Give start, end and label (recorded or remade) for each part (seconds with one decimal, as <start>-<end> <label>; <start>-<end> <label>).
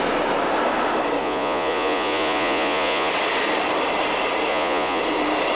0.0-1.2 recorded; 1.2-3.1 remade; 3.1-4.5 recorded; 4.5-5.0 remade; 5.0-5.5 recorded